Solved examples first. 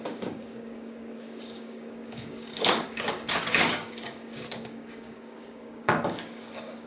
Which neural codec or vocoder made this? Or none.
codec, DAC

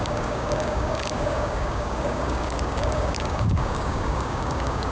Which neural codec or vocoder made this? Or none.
codec, DAC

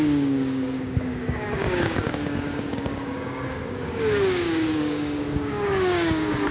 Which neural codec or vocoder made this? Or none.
codec, DAC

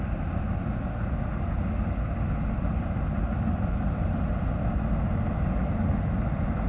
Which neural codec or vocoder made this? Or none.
none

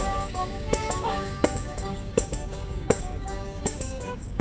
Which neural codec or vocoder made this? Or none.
codec, DAC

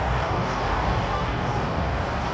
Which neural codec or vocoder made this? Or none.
codec, DAC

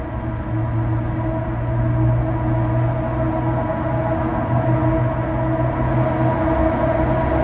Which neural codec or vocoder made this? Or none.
none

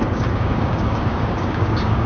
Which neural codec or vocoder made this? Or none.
codec, DAC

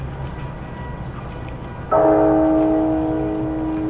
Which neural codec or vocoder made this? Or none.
none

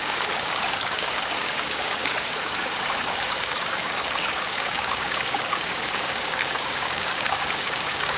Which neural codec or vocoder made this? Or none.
codec, DAC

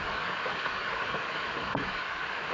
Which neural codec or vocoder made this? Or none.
codec, DAC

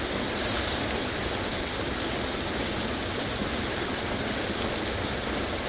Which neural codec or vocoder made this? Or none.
none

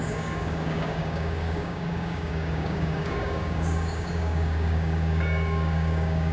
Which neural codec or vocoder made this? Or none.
codec, DAC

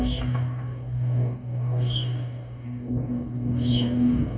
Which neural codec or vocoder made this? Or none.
codec, DAC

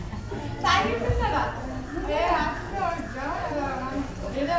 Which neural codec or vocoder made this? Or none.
none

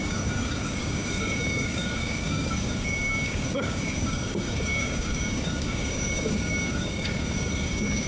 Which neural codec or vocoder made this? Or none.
codec, DAC